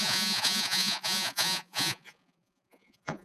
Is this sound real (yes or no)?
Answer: no